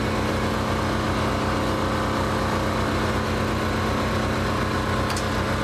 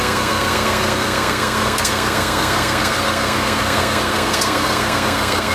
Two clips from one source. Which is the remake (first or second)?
second